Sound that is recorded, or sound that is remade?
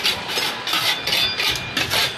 recorded